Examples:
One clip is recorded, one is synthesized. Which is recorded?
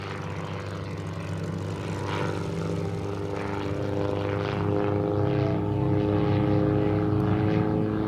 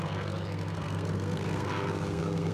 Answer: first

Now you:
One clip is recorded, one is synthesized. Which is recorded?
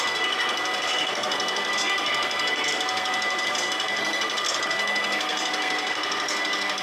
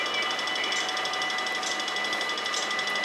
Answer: second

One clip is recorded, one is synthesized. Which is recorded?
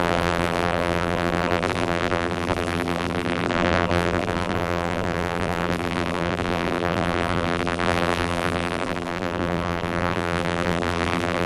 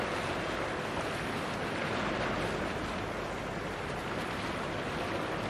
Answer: second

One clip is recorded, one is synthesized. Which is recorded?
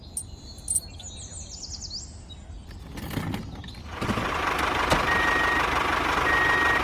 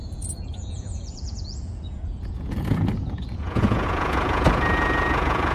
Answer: first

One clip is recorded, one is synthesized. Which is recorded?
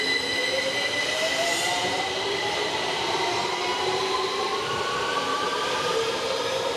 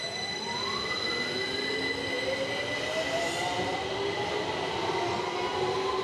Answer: second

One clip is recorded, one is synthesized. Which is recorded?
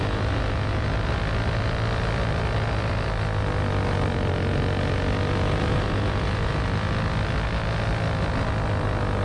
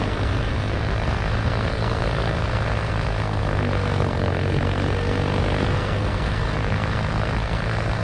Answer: first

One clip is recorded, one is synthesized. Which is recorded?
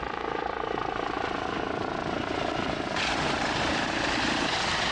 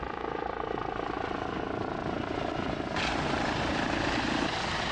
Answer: second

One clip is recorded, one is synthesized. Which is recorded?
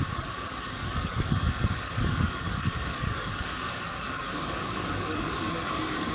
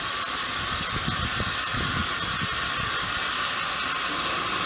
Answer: second